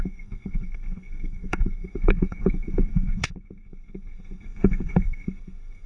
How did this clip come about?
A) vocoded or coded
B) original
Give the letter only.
A